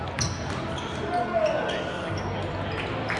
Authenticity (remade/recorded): recorded